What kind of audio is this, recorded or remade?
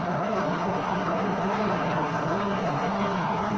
remade